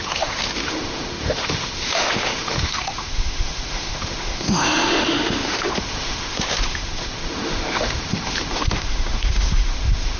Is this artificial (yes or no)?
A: yes